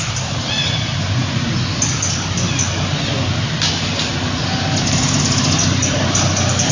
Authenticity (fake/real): real